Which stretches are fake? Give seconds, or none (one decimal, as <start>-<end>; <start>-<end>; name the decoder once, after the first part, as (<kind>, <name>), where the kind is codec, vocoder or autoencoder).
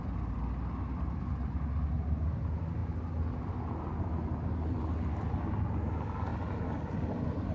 none